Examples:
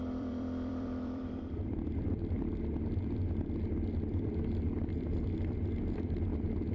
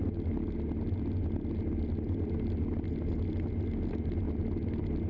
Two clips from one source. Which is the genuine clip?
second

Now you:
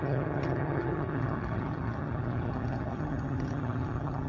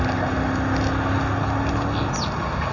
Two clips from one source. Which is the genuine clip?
second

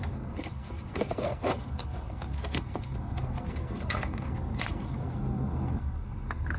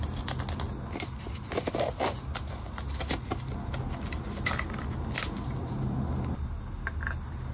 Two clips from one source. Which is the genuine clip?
second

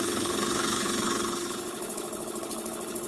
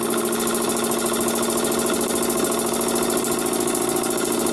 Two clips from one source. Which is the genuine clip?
second